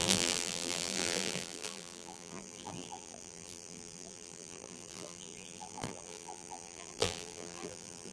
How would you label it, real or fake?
fake